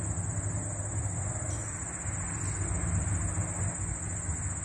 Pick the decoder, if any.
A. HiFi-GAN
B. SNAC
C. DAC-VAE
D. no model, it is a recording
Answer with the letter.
D